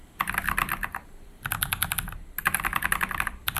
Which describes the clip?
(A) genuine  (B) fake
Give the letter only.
A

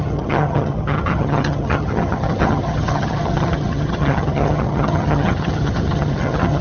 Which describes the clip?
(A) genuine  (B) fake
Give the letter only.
B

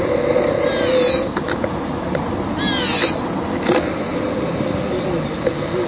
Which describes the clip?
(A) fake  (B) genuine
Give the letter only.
B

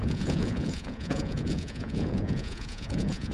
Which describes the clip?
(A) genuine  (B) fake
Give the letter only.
B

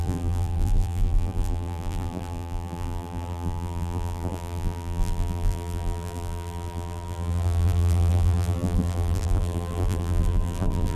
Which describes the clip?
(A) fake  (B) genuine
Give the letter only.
A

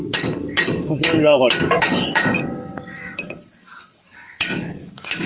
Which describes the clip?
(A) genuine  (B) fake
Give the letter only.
B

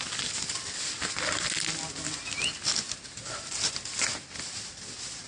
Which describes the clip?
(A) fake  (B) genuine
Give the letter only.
B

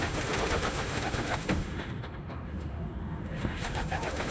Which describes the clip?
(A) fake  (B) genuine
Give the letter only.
A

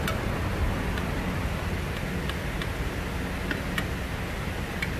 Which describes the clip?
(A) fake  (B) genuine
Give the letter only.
B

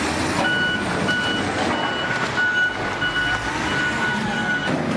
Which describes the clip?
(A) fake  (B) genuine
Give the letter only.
B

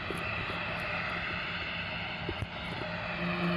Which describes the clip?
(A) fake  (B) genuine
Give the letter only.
B